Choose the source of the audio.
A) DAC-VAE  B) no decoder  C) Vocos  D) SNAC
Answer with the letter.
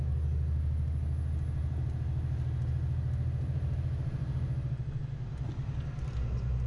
B